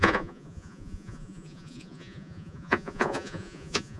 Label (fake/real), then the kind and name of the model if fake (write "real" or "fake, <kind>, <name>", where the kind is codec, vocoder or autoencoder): fake, vocoder, Vocos